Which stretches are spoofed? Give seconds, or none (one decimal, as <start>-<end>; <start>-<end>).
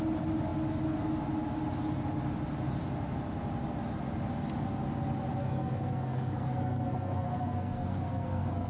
5.4-8.7